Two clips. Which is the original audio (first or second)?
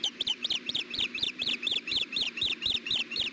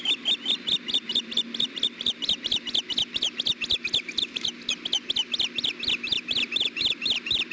second